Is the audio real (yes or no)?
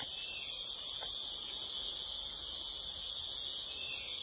yes